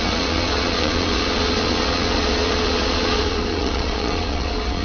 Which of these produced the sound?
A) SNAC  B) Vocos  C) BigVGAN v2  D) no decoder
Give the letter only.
B